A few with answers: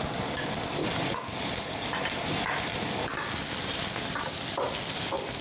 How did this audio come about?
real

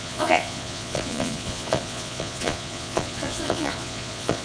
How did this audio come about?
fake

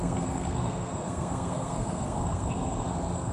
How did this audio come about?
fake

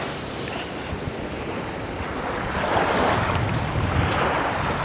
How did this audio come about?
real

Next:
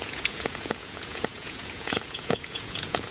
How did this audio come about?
fake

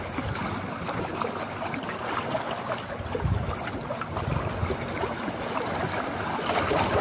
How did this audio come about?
real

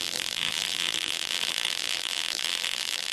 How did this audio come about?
fake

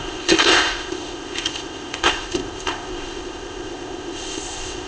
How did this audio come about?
fake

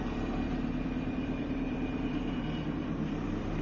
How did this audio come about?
fake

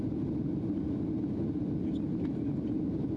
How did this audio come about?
real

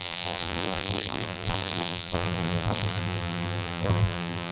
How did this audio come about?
fake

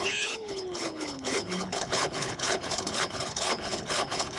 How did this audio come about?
fake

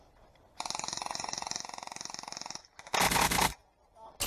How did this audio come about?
real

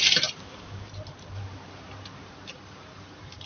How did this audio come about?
fake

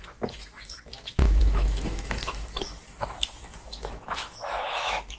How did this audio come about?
fake